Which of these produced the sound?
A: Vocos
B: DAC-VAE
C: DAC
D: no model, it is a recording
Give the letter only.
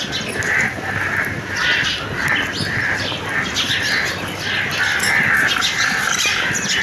D